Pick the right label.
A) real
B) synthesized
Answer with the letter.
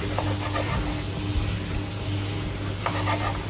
A